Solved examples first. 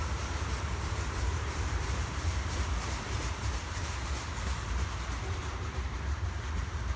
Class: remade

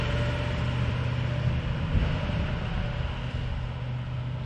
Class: recorded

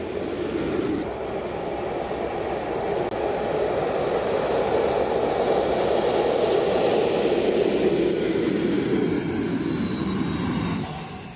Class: recorded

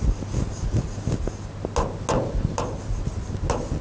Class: recorded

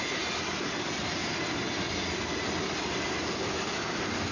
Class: recorded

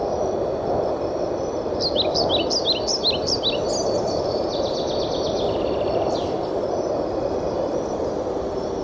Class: recorded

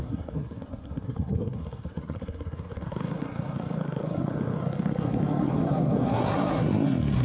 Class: remade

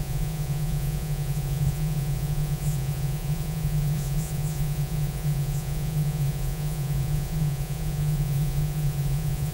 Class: remade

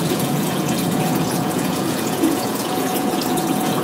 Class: remade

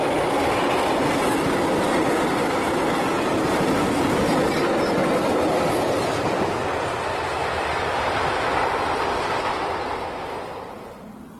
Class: recorded